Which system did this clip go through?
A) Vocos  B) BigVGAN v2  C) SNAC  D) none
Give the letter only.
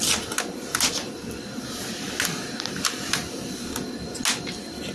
D